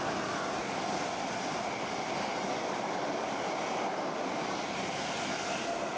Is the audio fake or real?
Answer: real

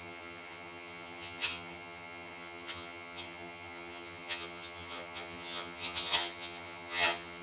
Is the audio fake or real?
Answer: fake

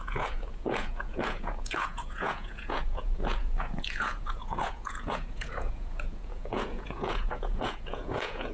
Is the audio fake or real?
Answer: fake